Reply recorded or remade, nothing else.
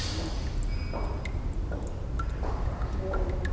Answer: recorded